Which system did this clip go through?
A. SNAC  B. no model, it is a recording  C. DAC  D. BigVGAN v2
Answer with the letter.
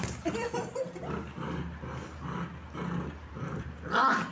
B